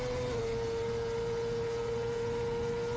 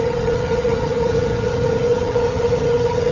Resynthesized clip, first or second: second